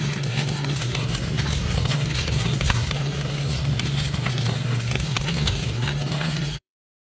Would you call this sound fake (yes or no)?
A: yes